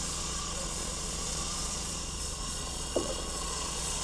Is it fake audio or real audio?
fake